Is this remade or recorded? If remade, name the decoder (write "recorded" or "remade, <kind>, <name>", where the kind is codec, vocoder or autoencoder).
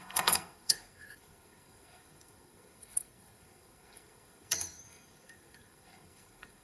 remade, codec, SNAC